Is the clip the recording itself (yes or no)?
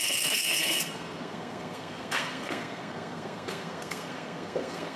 no